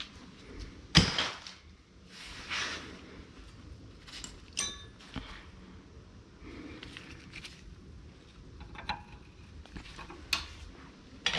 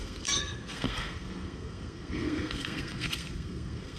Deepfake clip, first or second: second